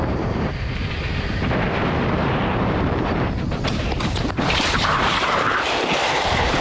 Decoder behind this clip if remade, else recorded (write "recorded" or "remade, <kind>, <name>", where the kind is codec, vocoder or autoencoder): remade, vocoder, BigVGAN v2